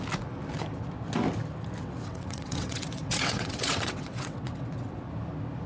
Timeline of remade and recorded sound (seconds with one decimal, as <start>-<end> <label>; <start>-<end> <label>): 0.0-1.8 recorded; 1.8-5.1 remade; 5.1-5.7 recorded